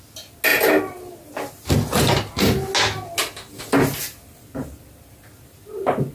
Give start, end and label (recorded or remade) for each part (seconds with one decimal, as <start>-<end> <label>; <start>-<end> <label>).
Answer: 0.0-6.1 recorded